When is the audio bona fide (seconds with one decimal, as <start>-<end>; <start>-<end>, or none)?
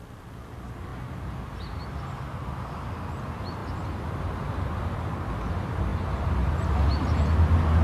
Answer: 0.0-3.6; 4.3-5.9; 6.6-7.8